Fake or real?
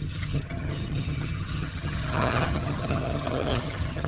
fake